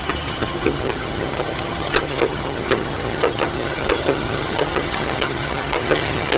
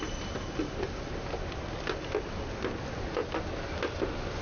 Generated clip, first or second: first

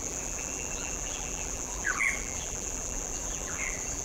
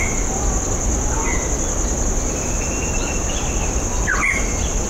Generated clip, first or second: first